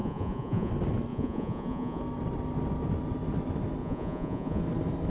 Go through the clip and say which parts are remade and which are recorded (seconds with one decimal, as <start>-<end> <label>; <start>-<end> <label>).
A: 0.0-0.7 remade; 0.7-1.1 recorded; 1.1-2.0 remade; 2.0-3.8 recorded; 3.8-4.6 remade; 4.6-5.1 recorded